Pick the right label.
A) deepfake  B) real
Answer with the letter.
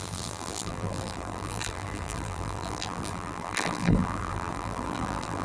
A